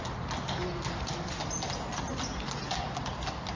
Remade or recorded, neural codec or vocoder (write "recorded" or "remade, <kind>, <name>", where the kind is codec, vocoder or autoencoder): recorded